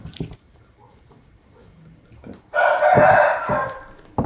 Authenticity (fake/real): real